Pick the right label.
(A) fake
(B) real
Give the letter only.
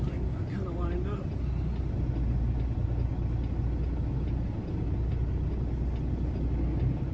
B